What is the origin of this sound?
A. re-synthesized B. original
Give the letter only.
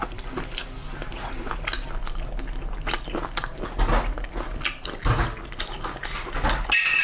B